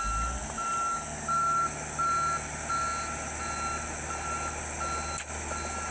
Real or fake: real